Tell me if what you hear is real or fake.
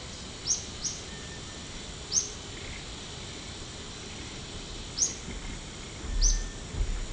real